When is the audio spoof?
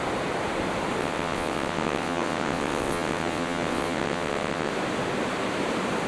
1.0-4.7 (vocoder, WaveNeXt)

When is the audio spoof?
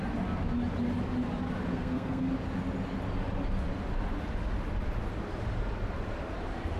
1.7-2.3 (codec, SNAC)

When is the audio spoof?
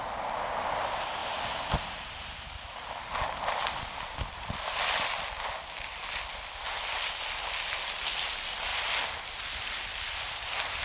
none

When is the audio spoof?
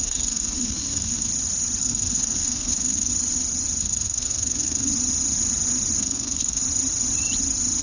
0.0-1.3 (codec, SNAC); 1.8-3.1; 3.8-4.9; 6.0-6.6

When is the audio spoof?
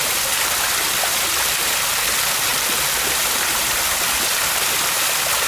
none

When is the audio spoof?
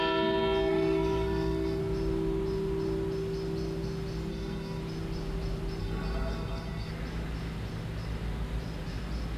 0.7-1.8 (codec, SNAC); 4.3-4.8; 5.8-6.9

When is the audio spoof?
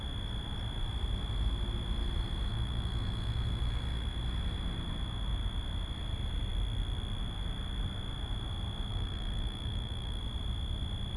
2.5-4.1 (autoencoder, DAC-VAE); 8.9-10.2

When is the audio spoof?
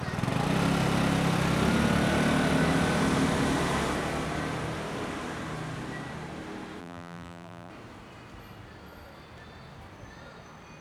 6.8-7.7 (vocoder, BigVGAN v2)